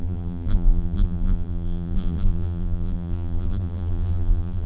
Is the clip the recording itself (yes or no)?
no